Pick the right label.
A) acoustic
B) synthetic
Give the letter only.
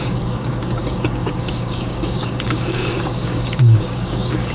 B